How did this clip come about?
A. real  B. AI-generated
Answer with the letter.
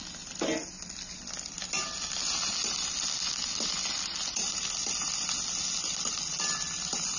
A